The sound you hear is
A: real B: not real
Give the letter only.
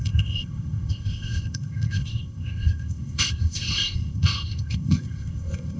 B